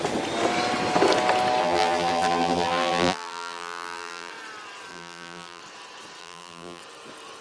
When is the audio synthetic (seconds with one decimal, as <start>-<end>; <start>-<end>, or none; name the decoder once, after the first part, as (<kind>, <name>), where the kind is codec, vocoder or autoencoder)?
1.6-4.3 (vocoder, BigVGAN v2); 4.9-5.6; 6.2-6.8